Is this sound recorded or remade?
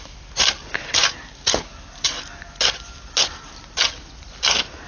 recorded